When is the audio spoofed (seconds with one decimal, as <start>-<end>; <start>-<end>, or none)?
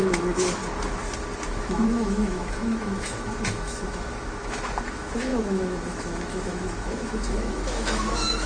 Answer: 0.0-0.6; 1.6-8.5